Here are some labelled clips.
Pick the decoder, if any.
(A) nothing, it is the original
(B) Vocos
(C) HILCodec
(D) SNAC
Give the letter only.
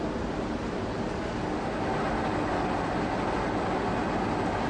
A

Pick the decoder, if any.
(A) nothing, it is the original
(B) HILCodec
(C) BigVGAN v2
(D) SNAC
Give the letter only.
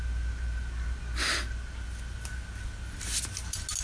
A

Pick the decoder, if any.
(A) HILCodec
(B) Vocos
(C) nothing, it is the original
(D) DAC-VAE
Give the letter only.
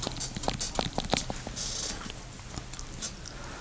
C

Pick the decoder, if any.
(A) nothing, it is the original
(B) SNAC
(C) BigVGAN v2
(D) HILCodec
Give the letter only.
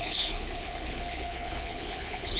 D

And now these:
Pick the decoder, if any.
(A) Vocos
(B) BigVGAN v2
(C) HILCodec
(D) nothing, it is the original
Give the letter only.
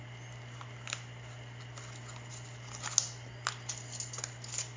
D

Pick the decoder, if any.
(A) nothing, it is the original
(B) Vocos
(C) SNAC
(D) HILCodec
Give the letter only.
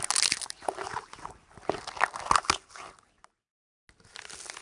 A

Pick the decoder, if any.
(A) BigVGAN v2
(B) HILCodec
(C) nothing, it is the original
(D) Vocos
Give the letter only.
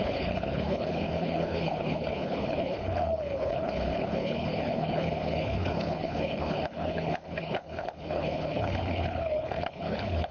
B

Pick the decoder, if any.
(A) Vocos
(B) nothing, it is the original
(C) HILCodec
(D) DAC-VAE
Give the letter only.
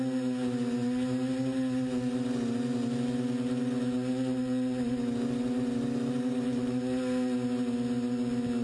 B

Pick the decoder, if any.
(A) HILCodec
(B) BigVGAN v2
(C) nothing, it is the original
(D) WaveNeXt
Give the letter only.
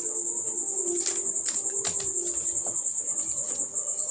C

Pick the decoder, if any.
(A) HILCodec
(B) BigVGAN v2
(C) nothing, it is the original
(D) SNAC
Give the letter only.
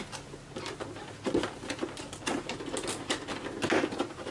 C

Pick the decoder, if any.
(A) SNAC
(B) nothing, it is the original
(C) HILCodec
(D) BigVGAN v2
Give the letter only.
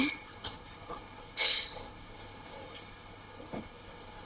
C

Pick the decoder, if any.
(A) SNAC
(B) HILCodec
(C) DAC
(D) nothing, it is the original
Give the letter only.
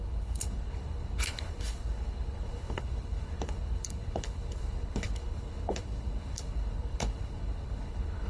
B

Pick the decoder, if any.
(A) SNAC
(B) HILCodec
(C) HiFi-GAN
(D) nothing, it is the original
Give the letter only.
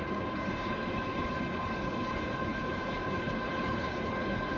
B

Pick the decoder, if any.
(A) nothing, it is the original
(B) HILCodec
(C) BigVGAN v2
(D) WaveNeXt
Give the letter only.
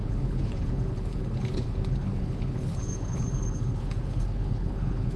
B